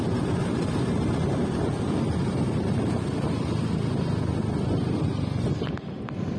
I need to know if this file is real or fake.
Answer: real